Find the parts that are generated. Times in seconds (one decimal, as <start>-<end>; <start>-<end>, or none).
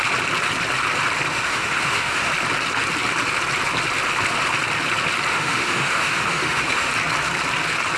1.3-2.3; 5.3-6.9